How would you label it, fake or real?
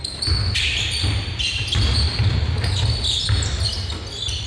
real